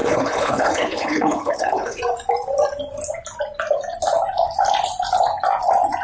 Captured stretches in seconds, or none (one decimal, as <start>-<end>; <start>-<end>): 2.0-6.0